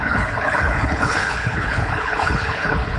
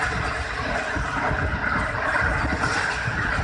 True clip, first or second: second